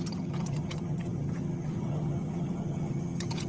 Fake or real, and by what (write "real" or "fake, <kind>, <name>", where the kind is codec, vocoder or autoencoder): fake, vocoder, HiFi-GAN